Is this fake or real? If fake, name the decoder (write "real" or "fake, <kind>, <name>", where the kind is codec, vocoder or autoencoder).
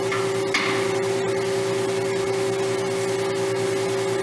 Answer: real